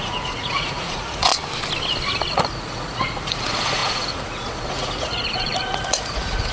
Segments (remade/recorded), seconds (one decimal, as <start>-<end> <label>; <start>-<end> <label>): 0.0-1.3 remade; 1.3-2.3 recorded; 2.3-6.5 remade